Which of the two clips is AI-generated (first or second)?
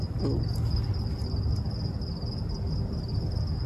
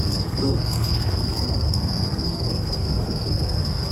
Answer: second